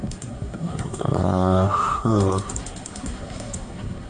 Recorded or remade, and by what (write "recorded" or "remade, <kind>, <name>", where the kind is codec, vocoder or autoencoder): remade, codec, SNAC